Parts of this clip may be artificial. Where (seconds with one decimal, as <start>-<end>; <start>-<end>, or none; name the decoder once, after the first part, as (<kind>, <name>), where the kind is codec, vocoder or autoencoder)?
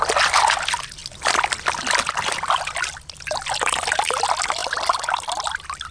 none